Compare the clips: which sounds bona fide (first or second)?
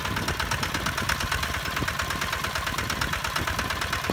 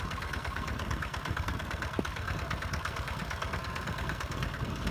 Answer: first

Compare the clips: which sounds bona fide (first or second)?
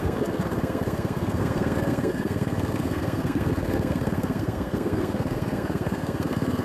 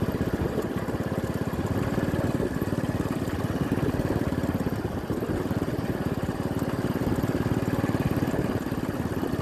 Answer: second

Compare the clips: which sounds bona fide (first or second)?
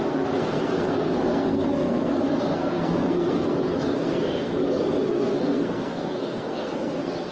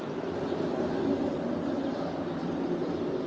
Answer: second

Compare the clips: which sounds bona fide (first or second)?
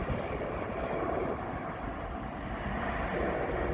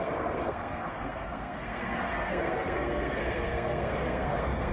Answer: first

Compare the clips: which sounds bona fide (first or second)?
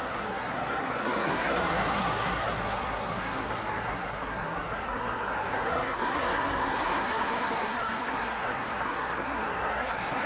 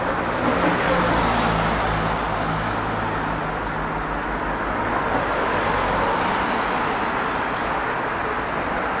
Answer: second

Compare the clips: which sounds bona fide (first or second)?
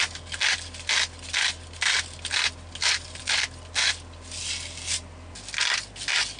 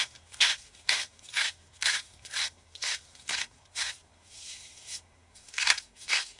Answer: first